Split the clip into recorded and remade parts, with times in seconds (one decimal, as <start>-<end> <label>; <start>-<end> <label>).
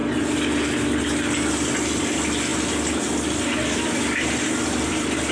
0.0-2.0 recorded; 2.0-2.5 remade; 2.5-3.0 recorded; 3.0-5.3 remade